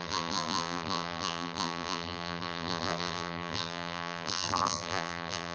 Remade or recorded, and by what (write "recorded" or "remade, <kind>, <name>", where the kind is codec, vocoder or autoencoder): remade, vocoder, BigVGAN v2